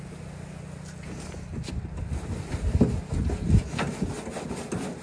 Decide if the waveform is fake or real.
real